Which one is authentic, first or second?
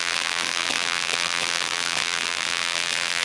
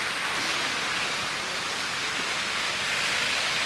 second